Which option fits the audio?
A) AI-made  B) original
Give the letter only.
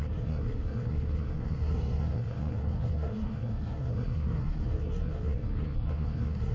A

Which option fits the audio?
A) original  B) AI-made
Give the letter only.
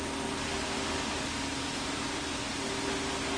A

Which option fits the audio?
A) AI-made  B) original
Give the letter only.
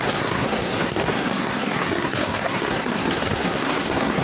A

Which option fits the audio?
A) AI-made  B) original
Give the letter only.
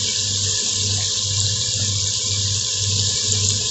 B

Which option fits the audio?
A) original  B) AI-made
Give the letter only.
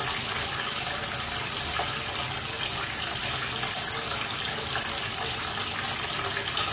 A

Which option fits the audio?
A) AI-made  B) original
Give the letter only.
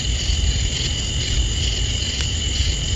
B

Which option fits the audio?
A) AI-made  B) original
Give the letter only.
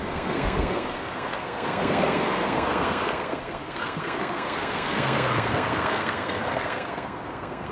A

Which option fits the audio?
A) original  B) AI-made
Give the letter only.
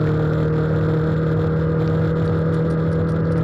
A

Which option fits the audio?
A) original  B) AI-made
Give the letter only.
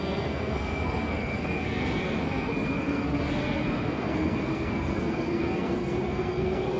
B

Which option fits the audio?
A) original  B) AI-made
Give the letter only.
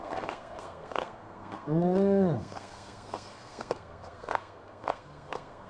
B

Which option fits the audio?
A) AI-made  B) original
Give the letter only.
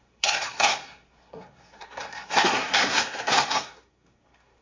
A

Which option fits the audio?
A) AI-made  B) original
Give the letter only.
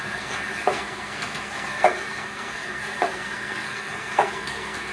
A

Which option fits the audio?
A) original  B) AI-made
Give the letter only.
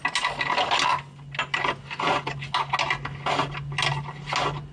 A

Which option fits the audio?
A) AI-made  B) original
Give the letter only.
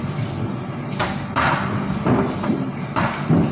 B